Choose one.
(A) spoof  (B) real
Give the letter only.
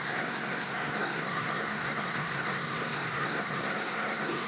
A